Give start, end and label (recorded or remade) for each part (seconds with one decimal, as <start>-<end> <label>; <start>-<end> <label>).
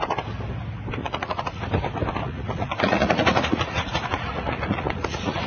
0.0-1.0 recorded; 1.0-1.6 remade; 1.6-2.2 recorded; 2.2-5.5 remade